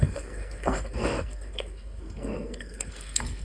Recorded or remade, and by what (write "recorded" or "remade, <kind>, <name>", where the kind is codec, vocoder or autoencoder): remade, codec, SNAC